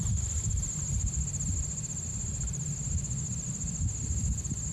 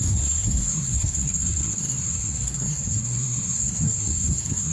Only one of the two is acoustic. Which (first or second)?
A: first